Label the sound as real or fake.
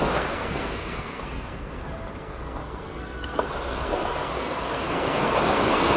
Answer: fake